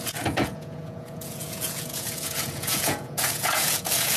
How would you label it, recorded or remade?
remade